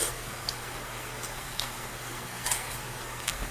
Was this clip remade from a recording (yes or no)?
yes